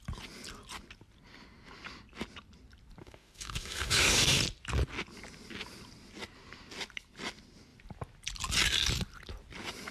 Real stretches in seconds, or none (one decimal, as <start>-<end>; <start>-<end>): 0.0-3.0; 4.4-9.9